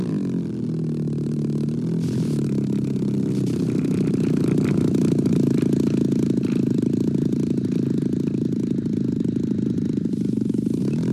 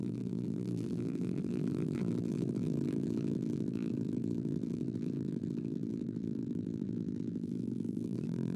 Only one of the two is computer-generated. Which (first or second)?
second